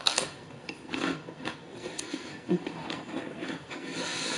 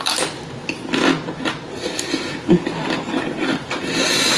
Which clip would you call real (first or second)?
second